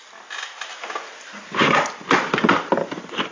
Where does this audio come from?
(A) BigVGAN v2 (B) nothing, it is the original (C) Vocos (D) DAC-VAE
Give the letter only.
B